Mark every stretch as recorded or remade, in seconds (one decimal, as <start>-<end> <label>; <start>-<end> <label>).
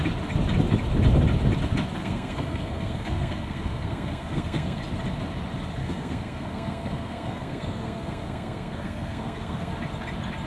0.0-2.0 recorded; 2.0-4.8 remade; 4.8-5.8 recorded; 5.8-9.7 remade; 9.7-10.5 recorded